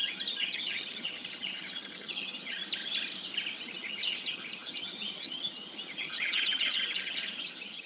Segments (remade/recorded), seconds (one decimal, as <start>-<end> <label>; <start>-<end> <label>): 0.0-2.6 remade; 2.6-3.6 recorded; 3.6-7.9 remade